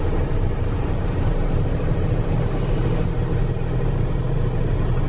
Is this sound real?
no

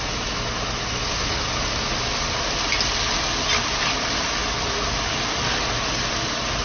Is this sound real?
yes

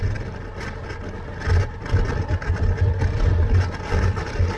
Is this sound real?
yes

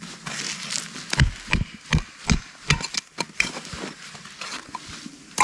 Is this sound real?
yes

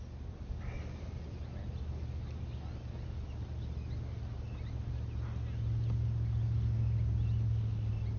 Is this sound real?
yes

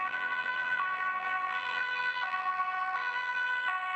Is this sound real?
no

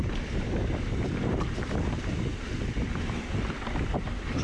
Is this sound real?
no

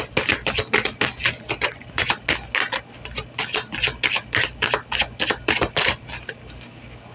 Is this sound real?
yes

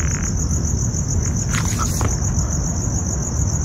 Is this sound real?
yes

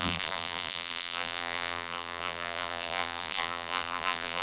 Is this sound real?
no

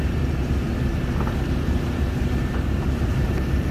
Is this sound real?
no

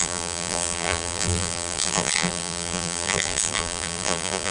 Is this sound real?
no